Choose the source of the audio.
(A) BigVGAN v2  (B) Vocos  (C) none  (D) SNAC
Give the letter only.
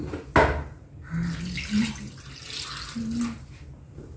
C